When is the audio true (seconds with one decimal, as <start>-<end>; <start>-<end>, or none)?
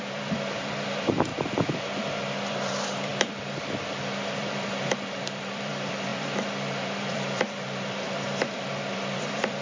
1.3-2.5; 3.1-4.4